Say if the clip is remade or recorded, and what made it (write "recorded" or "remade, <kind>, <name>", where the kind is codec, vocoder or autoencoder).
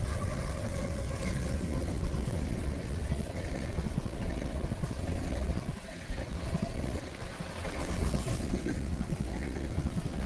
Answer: remade, vocoder, WaveNeXt